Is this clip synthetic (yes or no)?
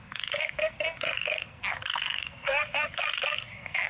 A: yes